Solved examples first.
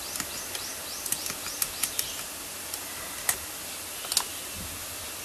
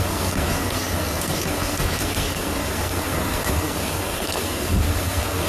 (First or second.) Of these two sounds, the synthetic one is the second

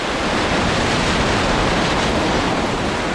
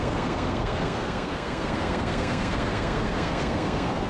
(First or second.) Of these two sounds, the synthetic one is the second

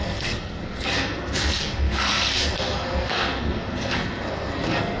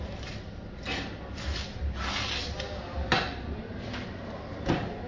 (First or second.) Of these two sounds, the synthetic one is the first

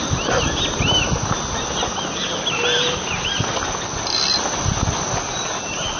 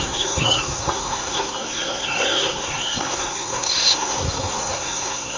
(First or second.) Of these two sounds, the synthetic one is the second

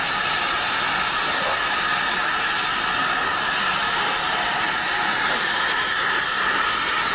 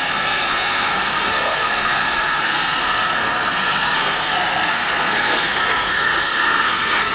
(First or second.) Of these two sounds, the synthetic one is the second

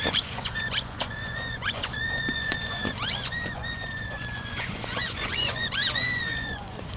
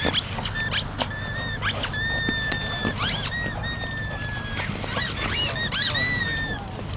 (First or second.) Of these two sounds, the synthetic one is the first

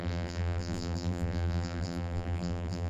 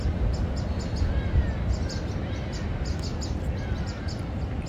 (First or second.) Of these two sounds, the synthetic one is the first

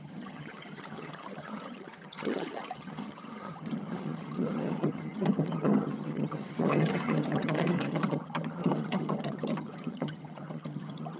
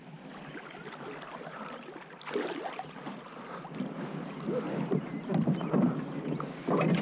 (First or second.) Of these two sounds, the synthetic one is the first